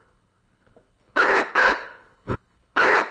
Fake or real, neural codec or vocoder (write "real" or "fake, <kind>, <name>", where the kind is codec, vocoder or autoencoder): fake, codec, HILCodec